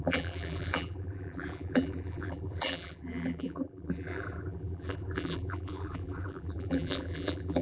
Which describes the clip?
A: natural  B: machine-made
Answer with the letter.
B